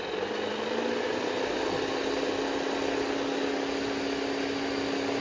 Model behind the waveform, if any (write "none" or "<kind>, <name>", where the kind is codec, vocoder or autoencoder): none